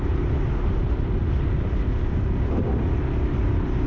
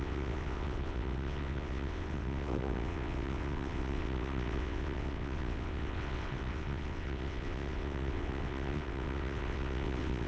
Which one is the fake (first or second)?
second